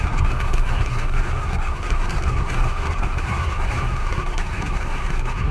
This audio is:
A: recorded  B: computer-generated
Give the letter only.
B